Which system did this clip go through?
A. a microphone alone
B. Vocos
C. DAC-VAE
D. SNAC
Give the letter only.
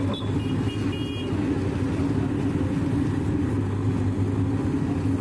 A